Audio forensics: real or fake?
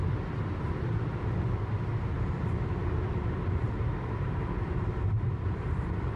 fake